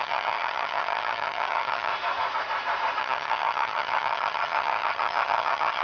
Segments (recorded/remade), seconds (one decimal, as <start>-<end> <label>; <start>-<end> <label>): 0.0-1.9 remade; 1.9-3.0 recorded; 3.0-5.8 remade

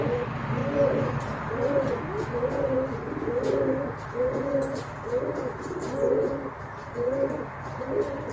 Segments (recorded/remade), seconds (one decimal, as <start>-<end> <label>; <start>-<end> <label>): 0.0-8.3 recorded

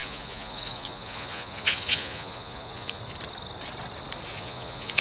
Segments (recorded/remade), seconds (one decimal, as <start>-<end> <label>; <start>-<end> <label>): 0.0-3.0 remade; 3.0-4.3 recorded; 4.3-5.0 remade

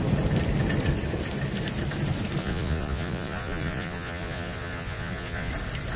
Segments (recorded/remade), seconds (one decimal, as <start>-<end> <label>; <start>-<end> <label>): 0.0-2.4 recorded; 2.4-5.5 remade; 5.5-6.0 recorded

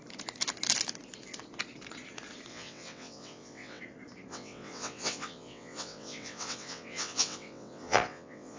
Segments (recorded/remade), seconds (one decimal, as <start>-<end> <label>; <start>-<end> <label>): 0.0-2.5 recorded; 2.5-3.8 remade; 3.8-4.3 recorded; 4.3-8.6 remade

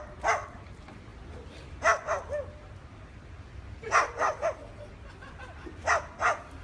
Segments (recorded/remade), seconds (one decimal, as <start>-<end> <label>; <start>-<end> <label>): 0.0-6.6 recorded

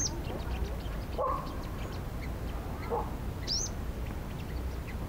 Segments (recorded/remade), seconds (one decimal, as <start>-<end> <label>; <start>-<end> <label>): 0.0-5.1 recorded

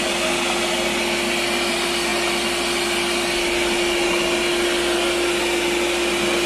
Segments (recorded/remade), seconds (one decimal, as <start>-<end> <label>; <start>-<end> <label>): 0.0-6.5 recorded